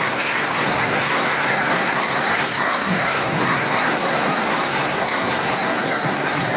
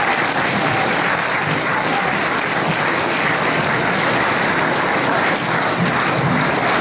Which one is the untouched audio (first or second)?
second